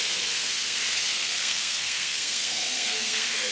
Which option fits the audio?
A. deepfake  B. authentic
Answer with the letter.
A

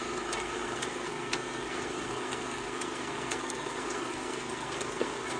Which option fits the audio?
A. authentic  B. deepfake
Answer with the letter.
B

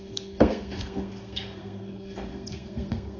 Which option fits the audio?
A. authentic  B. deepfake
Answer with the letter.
B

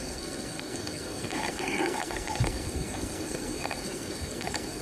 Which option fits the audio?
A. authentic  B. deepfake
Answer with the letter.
B